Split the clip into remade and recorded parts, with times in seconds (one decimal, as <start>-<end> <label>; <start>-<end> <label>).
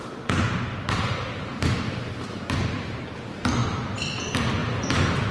0.0-3.2 remade; 3.2-4.6 recorded; 4.6-5.3 remade